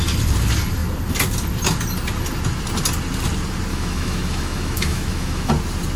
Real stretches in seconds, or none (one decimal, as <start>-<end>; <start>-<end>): 0.0-3.7; 5.5-6.0